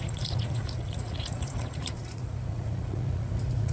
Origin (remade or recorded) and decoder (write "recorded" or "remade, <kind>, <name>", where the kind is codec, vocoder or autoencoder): remade, vocoder, Vocos